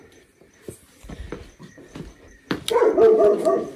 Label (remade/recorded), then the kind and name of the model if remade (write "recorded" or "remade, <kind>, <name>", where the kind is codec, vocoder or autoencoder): recorded